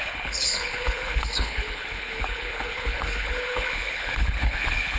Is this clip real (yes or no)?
no